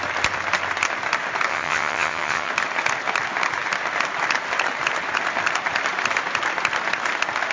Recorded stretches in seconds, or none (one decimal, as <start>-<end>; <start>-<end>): 0.0-1.5; 2.5-7.5

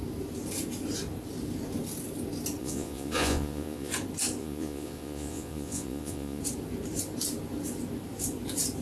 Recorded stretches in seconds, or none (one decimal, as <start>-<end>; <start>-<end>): 0.0-2.6; 3.9-4.4; 6.4-8.8

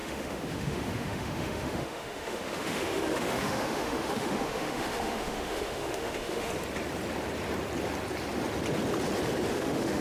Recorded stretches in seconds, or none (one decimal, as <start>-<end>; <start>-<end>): 6.5-9.5

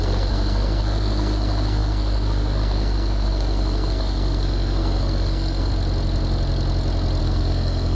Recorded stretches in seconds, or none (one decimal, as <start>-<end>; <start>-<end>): 5.7-7.2

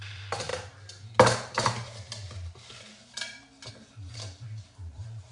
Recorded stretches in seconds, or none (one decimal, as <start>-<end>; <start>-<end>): 0.5-3.7

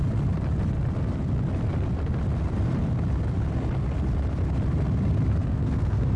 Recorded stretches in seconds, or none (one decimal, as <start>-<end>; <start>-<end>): 0.0-5.5

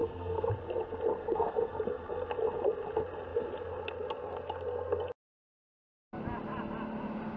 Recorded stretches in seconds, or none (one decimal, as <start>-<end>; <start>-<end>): 0.5-1.2; 1.7-7.4